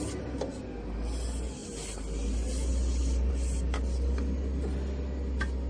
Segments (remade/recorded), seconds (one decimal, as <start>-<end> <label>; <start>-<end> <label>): 0.0-5.7 recorded